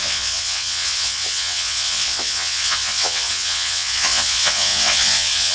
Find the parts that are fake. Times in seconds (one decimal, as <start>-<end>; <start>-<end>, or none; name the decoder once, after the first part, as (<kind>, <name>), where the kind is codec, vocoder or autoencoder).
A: 0.0-5.5 (vocoder, WaveNeXt)